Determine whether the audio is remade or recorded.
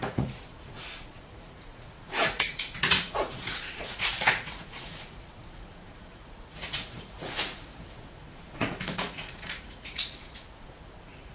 remade